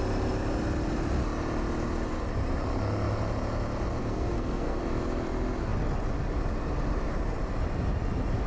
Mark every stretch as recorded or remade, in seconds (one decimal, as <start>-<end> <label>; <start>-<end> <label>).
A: 0.0-4.0 recorded; 4.0-4.8 remade; 4.8-8.5 recorded